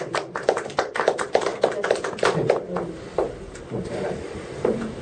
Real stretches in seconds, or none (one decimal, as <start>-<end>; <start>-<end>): 1.5-4.5